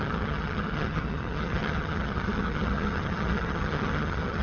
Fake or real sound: fake